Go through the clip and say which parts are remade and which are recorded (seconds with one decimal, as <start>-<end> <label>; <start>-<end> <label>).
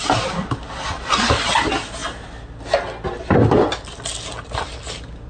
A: 0.0-5.3 recorded